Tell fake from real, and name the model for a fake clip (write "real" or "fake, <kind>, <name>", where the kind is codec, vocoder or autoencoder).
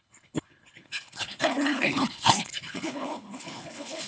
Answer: fake, codec, HILCodec